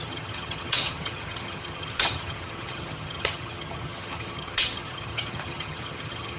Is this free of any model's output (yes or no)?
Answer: no